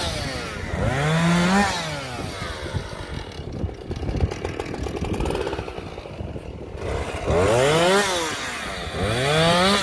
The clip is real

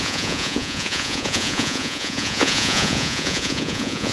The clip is fake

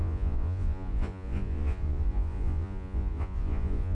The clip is fake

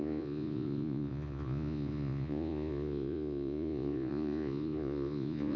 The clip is fake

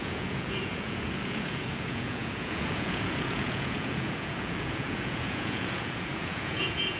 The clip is fake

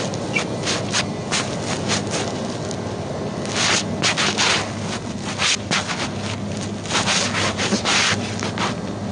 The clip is real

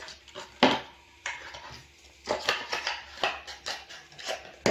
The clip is real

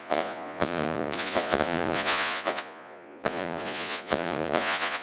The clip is fake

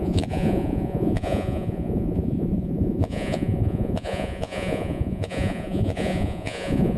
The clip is fake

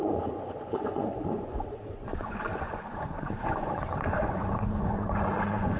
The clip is fake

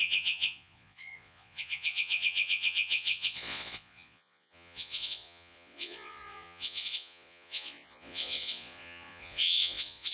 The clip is fake